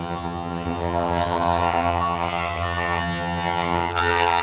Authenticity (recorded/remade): remade